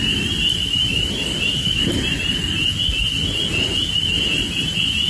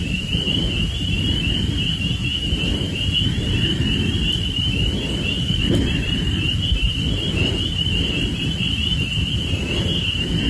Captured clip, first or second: first